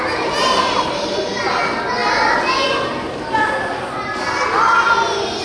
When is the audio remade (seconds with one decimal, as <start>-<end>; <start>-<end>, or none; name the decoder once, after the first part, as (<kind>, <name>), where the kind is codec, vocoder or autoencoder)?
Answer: none